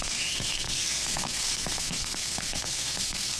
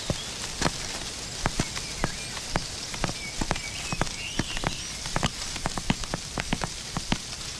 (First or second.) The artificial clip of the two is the first